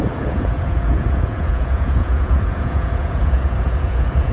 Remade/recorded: remade